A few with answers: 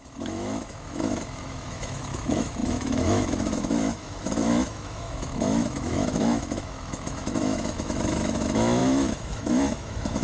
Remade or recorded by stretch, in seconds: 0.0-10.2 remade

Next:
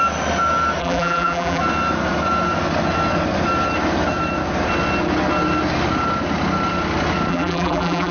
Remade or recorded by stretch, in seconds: 0.0-0.8 recorded; 0.8-1.6 remade; 1.6-7.3 recorded; 7.3-8.1 remade

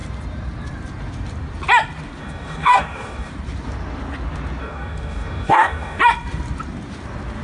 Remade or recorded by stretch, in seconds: 0.0-2.2 recorded; 2.2-3.3 remade; 3.3-4.6 recorded; 4.6-6.0 remade; 6.0-7.4 recorded